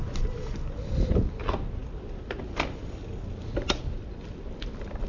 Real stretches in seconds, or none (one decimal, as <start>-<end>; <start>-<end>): 0.0-5.1